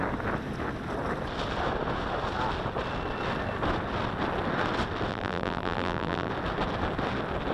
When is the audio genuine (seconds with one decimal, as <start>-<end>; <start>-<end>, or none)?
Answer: 0.0-5.1; 6.3-7.5